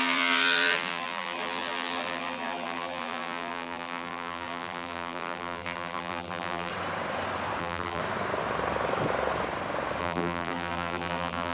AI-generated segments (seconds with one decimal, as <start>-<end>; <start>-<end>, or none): 0.0-6.7; 7.6-8.0; 10.0-11.5